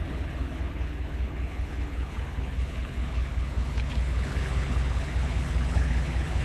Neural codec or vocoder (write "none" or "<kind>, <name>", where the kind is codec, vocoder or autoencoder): codec, HILCodec